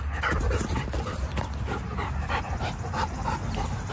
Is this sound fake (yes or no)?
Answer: no